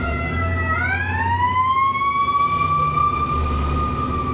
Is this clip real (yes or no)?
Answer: yes